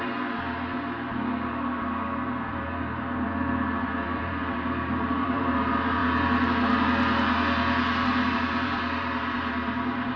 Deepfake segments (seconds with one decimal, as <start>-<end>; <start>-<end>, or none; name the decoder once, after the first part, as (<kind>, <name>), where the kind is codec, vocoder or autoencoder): 0.0-6.0 (vocoder, BigVGAN v2); 8.3-10.2